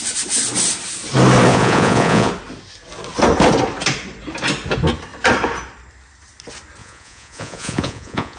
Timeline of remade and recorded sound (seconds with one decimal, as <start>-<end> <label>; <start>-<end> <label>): 0.0-1.5 recorded; 1.5-2.3 remade; 2.3-6.8 recorded; 6.8-8.4 remade